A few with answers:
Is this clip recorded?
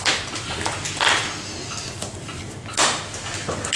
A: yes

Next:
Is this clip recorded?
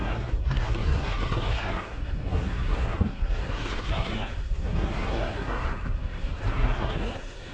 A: no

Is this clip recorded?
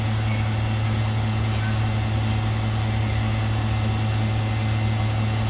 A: yes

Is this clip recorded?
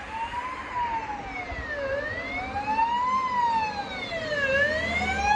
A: yes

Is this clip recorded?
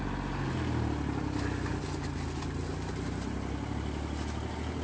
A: yes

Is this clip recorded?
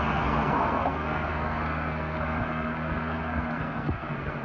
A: no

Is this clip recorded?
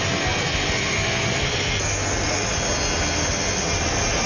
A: yes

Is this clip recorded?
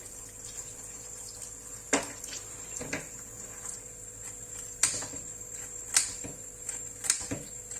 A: yes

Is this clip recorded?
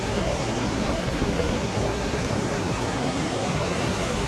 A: no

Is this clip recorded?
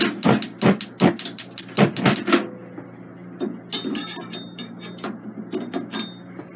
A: yes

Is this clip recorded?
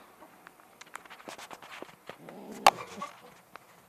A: yes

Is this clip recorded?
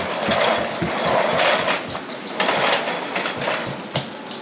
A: yes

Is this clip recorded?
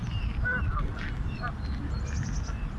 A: yes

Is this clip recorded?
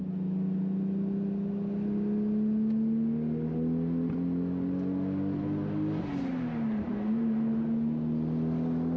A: yes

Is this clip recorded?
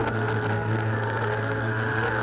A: no